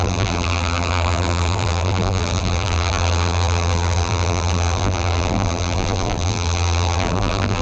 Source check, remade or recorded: remade